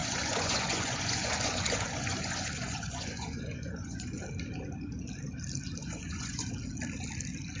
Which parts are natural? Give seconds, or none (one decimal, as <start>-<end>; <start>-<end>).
4.2-5.8; 6.5-7.6